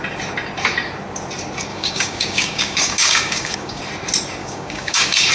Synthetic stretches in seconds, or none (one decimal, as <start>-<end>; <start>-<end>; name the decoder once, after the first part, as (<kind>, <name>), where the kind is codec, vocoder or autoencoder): 1.7-3.8 (codec, DAC); 4.4-5.3